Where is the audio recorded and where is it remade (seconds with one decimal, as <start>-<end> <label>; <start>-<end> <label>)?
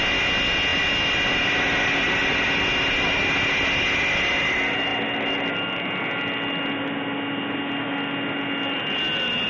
0.0-9.5 recorded